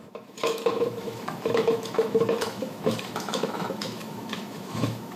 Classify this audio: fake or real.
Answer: fake